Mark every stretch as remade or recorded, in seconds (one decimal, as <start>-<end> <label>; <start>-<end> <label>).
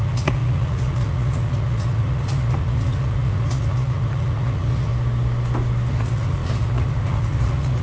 0.0-4.9 remade; 4.9-5.9 recorded; 5.9-7.8 remade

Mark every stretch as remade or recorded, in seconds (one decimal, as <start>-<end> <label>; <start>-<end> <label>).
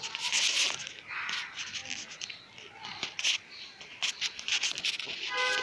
0.0-5.6 recorded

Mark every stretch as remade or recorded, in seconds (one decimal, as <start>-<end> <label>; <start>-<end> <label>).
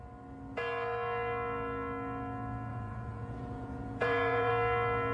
0.0-2.7 recorded; 2.7-4.5 remade; 4.5-5.1 recorded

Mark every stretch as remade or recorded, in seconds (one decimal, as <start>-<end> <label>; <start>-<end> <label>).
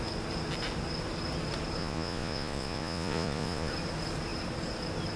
0.0-1.8 recorded; 1.8-3.7 remade; 3.7-5.2 recorded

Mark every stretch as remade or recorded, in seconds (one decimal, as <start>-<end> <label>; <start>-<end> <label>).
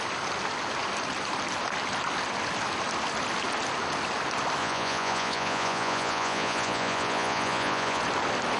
0.0-4.6 recorded; 4.6-8.0 remade; 8.0-8.6 recorded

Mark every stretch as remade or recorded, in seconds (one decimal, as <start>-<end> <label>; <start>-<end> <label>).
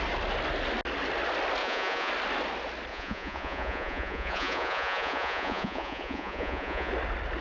0.0-1.6 recorded; 1.6-2.1 remade; 2.1-2.9 recorded; 2.9-6.9 remade; 6.9-7.4 recorded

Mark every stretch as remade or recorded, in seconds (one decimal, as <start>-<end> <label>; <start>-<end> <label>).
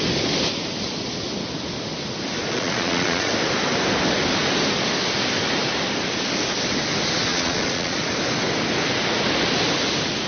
0.0-2.5 recorded; 2.5-3.3 remade; 3.3-7.3 recorded; 7.3-8.0 remade; 8.0-10.3 recorded